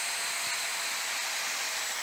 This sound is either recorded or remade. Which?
recorded